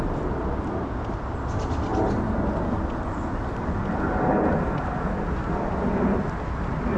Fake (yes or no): no